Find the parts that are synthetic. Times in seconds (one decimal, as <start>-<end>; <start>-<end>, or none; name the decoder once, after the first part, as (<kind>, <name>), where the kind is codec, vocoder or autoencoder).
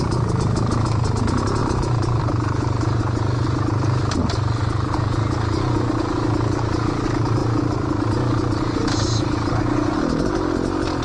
1.6-3.0 (vocoder, BigVGAN v2)